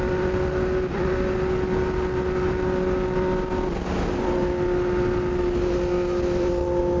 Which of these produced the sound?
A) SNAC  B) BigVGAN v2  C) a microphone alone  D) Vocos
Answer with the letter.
C